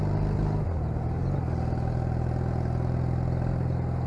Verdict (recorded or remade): recorded